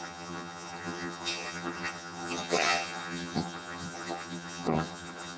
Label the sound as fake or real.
fake